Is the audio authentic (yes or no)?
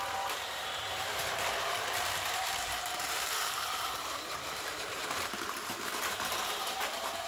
no